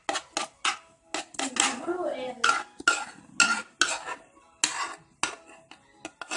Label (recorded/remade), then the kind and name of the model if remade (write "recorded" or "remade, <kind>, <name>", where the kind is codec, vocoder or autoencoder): recorded